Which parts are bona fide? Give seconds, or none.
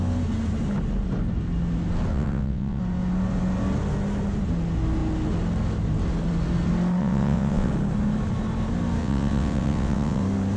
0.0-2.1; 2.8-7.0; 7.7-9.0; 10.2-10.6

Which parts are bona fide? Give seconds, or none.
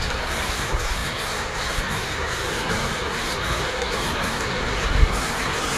none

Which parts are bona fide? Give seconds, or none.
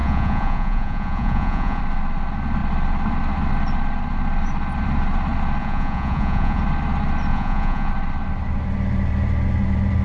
1.8-5.6; 6.6-7.3; 7.9-10.0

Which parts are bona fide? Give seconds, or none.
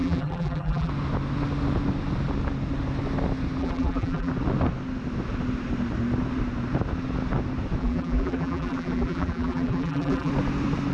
0.9-3.6; 4.3-7.8; 10.3-10.9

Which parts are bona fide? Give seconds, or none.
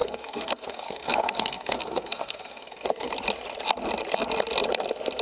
3.1-5.2